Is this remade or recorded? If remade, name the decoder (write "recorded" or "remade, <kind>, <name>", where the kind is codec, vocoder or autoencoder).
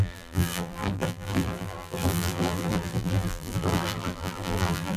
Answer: remade, vocoder, BigVGAN v2